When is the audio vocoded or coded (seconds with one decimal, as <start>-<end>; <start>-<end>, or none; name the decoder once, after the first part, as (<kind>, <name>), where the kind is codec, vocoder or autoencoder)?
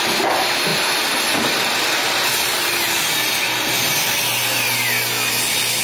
none